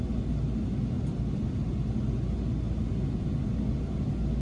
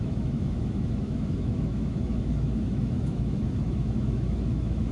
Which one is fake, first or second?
second